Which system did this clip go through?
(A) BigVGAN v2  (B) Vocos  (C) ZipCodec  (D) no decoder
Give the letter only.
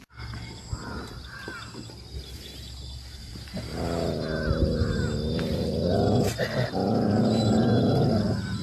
D